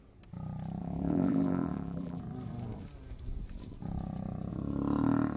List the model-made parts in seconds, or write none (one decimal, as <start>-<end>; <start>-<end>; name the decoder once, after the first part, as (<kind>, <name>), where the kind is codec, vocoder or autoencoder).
0.8-2.2 (vocoder, BigVGAN v2)